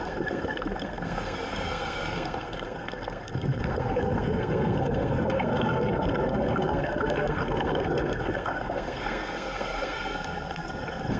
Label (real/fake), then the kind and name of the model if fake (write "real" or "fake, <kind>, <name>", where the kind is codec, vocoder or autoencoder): fake, codec, SNAC